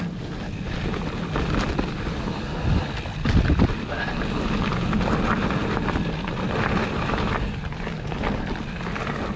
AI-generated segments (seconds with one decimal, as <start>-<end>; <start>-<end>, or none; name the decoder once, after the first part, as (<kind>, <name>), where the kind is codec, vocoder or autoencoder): none